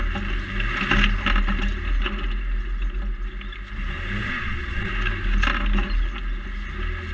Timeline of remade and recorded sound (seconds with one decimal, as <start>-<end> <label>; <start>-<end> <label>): 0.0-4.2 recorded; 4.2-4.9 remade; 4.9-7.1 recorded